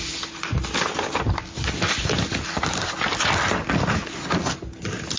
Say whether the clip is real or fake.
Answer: real